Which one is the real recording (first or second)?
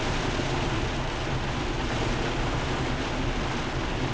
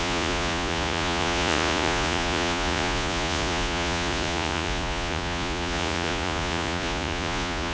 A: first